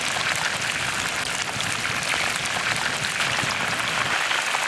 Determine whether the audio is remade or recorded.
recorded